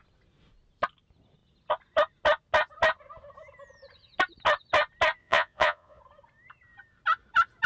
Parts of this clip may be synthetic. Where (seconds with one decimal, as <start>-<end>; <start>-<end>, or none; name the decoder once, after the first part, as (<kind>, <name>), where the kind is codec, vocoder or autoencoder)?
5.2-6.0 (vocoder, Vocos)